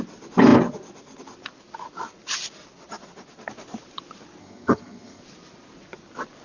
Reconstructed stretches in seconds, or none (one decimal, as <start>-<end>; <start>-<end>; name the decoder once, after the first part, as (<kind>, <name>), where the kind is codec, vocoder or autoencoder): 4.4-5.2 (vocoder, HiFi-GAN)